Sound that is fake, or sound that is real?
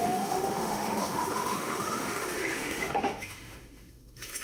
fake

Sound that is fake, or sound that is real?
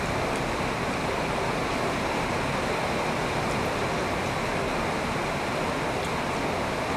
real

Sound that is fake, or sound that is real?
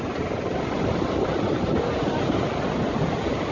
real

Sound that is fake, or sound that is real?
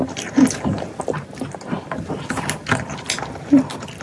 real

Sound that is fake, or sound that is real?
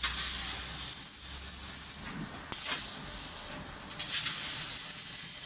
real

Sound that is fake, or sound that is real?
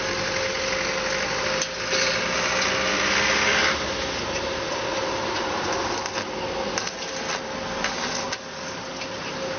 real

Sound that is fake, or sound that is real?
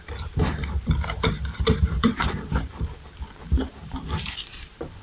fake